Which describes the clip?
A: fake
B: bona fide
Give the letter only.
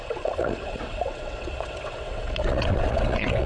A